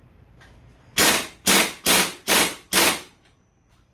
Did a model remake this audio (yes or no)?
yes